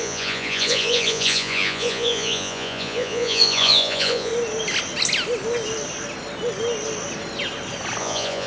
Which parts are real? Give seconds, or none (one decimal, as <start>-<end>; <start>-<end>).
4.3-8.0